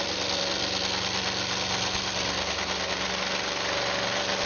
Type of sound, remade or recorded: recorded